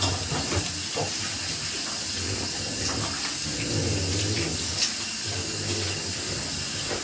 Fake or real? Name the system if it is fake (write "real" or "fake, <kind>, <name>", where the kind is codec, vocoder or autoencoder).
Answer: real